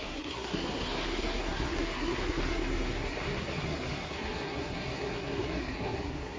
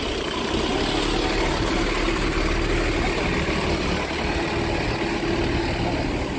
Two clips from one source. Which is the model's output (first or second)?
first